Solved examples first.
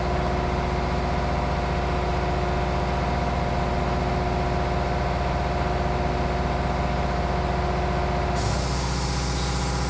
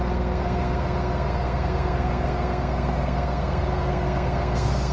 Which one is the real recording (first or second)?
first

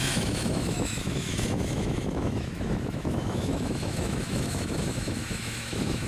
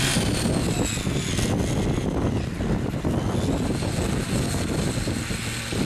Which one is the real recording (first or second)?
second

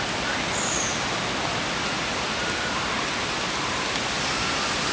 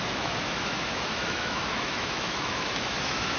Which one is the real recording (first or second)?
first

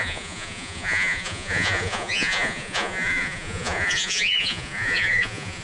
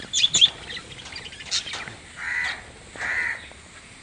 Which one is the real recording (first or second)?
second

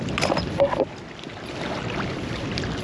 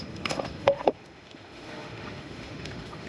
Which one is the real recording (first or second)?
first